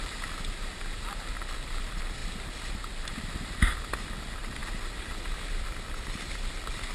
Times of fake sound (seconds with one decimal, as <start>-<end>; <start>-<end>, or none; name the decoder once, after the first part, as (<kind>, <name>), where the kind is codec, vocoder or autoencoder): 0.0-2.2 (vocoder, BigVGAN v2); 2.8-6.9